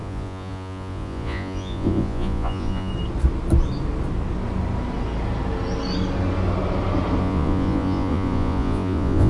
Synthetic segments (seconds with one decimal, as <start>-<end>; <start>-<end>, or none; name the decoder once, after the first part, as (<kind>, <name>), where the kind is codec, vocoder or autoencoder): 0.0-2.9 (vocoder, Vocos); 7.2-9.3